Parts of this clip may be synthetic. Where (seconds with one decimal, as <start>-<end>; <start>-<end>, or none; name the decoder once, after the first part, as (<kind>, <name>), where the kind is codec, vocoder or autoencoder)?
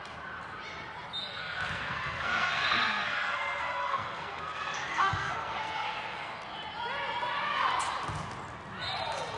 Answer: 1.3-6.4 (codec, SNAC)